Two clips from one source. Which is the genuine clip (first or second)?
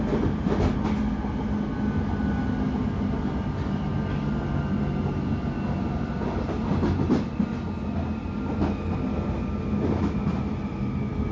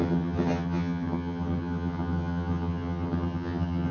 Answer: first